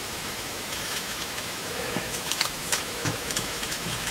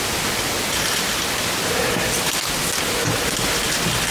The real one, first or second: second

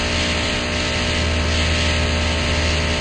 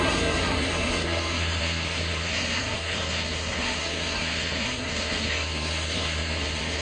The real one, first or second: first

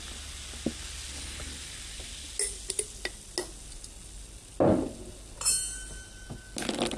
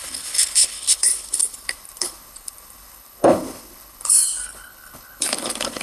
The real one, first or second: first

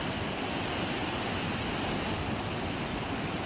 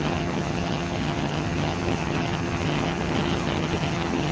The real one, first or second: first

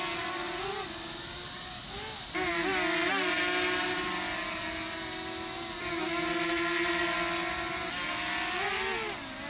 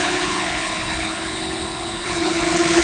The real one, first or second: first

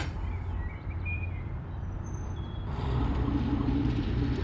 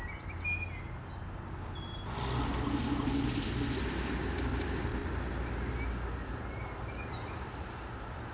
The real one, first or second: second